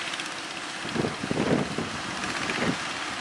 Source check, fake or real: real